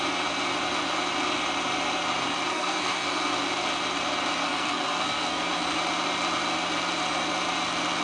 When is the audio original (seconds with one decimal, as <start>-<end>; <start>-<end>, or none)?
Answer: 0.0-2.5; 3.1-4.4; 5.6-8.0